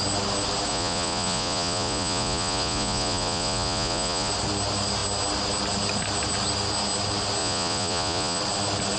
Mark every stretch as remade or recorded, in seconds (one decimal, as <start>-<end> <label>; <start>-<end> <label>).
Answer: 0.0-0.7 recorded; 0.7-4.3 remade; 4.3-7.4 recorded; 7.4-8.4 remade; 8.4-9.0 recorded

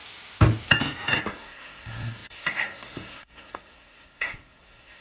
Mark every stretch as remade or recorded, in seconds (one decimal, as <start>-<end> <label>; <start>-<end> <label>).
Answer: 0.0-1.2 recorded; 1.2-5.0 remade

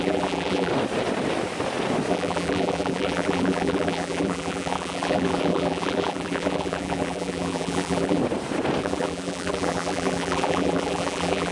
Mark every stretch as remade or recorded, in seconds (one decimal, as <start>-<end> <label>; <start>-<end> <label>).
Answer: 0.0-0.7 remade; 0.7-2.1 recorded; 2.1-8.2 remade; 8.2-8.8 recorded; 8.8-11.5 remade